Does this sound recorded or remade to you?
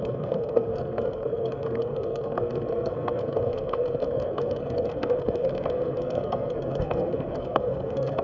remade